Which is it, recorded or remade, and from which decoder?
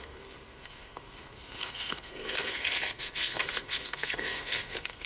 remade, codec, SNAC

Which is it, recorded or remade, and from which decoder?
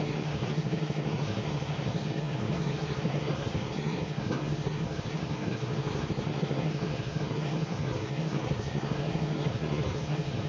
remade, codec, SNAC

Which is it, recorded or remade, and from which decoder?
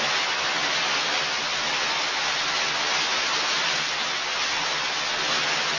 recorded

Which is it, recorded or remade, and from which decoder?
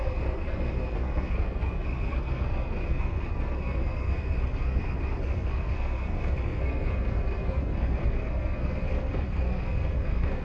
remade, codec, SNAC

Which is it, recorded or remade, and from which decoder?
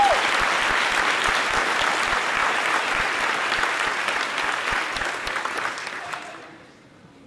recorded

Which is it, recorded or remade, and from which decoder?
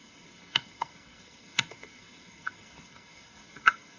remade, codec, SNAC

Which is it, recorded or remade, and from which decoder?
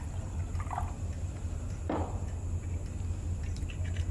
recorded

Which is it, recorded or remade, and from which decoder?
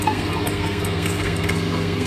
remade, codec, SNAC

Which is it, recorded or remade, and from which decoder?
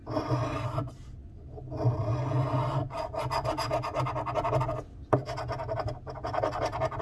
recorded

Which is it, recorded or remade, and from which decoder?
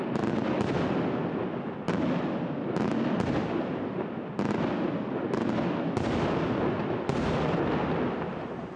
recorded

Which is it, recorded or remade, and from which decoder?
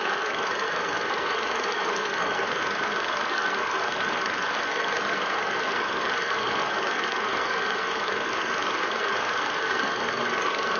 remade, codec, SNAC